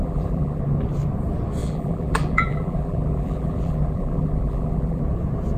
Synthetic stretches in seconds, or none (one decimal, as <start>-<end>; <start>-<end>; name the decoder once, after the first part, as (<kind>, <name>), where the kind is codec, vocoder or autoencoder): 0.0-0.6 (vocoder, BigVGAN v2); 1.6-5.0